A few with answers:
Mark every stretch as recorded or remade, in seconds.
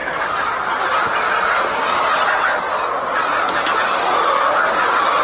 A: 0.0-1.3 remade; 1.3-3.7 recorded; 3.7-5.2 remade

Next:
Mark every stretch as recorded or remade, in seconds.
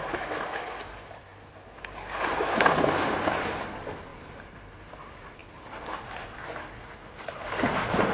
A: 0.0-4.1 recorded; 4.1-4.7 remade; 4.7-8.1 recorded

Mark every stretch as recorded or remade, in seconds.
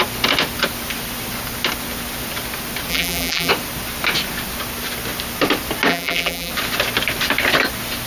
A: 0.0-2.9 recorded; 2.9-3.5 remade; 3.5-5.9 recorded; 5.9-6.5 remade; 6.5-8.1 recorded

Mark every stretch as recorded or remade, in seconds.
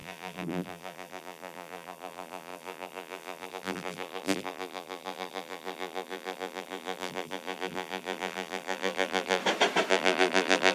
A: 0.0-9.4 remade; 9.4-9.9 recorded; 9.9-10.7 remade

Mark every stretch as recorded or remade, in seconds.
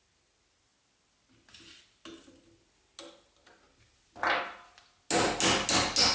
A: 0.0-6.1 recorded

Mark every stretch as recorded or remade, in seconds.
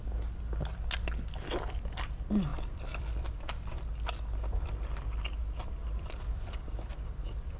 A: 0.0-2.5 recorded; 2.5-3.4 remade; 3.4-5.4 recorded; 5.4-7.6 remade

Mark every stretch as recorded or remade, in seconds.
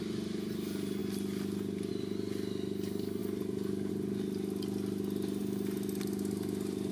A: 0.0-6.9 recorded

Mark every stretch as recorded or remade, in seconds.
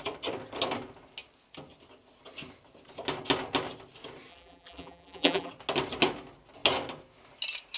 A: 0.0-4.3 recorded; 4.3-5.5 remade; 5.5-7.8 recorded